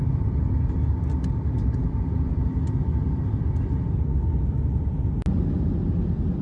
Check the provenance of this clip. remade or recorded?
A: recorded